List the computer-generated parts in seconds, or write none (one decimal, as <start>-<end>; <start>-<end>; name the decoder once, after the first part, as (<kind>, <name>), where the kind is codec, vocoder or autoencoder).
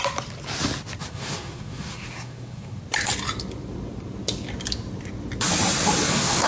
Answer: 1.0-2.8 (codec, SNAC); 6.1-6.5